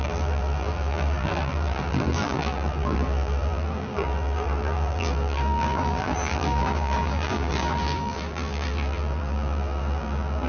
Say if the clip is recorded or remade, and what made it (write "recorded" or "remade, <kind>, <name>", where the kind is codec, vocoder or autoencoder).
remade, vocoder, BigVGAN v2